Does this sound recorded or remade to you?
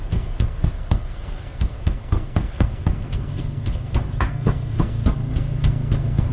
remade